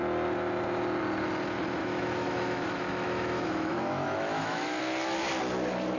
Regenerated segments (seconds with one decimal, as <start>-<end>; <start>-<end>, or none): 1.8-4.8